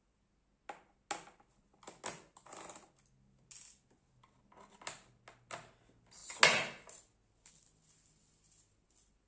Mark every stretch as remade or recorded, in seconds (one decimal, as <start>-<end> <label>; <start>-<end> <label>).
0.0-9.3 recorded